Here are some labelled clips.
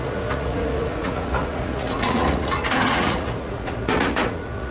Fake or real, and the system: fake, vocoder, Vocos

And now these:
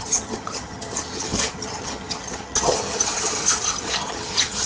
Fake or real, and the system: fake, vocoder, HiFi-GAN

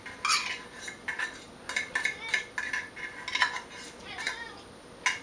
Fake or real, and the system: real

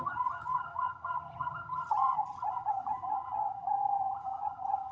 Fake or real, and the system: fake, vocoder, HiFi-GAN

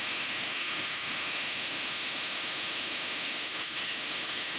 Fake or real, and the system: fake, autoencoder, DAC-VAE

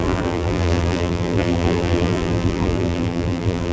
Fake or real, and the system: fake, vocoder, BigVGAN v2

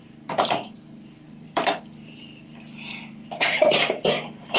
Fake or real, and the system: fake, vocoder, BigVGAN v2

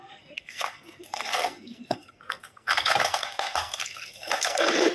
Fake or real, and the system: fake, codec, SNAC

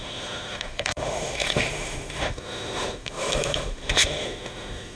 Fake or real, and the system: fake, autoencoder, DAC-VAE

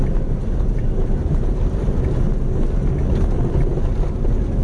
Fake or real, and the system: real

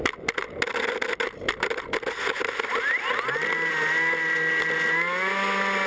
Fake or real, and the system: real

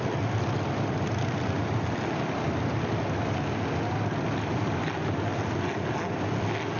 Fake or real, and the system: real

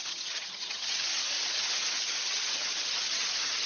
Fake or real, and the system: fake, vocoder, HiFi-GAN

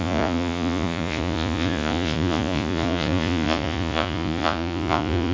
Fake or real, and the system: fake, vocoder, Vocos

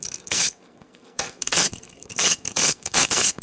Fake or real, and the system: fake, codec, SNAC